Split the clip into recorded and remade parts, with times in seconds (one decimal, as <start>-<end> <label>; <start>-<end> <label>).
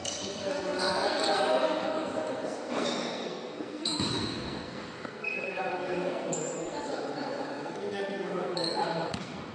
0.0-9.5 remade